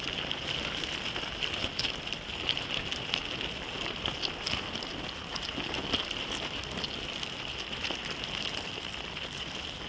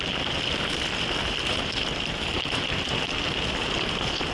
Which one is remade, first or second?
second